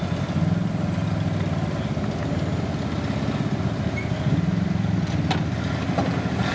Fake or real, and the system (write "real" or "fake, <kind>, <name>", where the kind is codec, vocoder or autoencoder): real